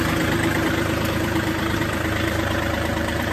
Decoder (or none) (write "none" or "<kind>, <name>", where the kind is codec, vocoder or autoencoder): vocoder, BigVGAN v2